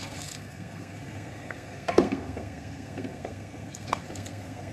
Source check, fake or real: fake